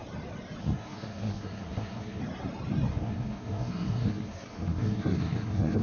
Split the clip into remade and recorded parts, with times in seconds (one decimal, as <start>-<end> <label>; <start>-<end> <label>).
0.0-0.6 recorded; 0.6-2.2 remade; 2.2-2.9 recorded; 2.9-5.8 remade